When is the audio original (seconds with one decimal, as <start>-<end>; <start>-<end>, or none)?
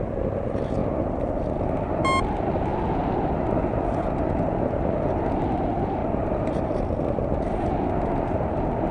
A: 0.0-6.0; 6.8-8.9